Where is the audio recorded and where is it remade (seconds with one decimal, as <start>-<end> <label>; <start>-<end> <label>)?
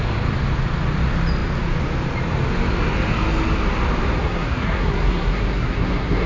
0.0-4.2 recorded; 4.2-6.3 remade